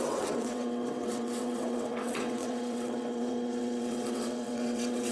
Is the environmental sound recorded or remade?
remade